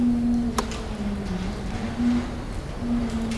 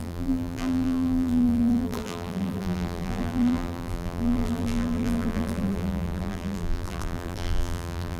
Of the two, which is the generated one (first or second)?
second